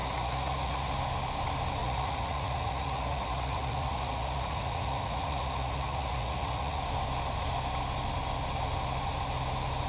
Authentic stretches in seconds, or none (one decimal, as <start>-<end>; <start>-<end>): 0.9-1.8; 6.8-9.9